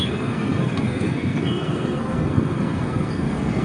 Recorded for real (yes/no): no